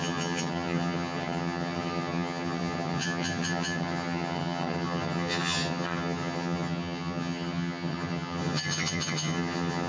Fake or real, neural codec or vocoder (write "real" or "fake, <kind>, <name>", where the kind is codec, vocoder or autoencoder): fake, vocoder, HiFi-GAN